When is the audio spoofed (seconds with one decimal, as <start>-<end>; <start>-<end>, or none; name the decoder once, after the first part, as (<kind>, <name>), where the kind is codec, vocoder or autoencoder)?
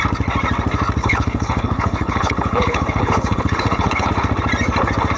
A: 1.0-4.1 (codec, HILCodec)